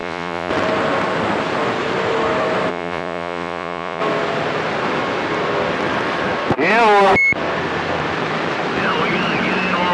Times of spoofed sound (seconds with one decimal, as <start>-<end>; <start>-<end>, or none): 0.0-0.5; 2.7-4.0